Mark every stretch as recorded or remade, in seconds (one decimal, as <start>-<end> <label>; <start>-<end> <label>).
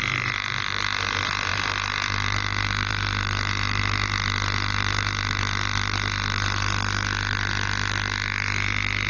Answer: 0.0-1.5 recorded; 1.5-2.9 remade; 2.9-3.8 recorded; 3.8-5.4 remade; 5.4-9.1 recorded